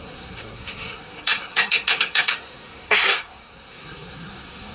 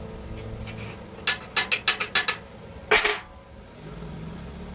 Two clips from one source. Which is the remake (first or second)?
first